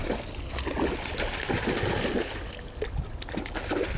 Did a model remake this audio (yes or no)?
no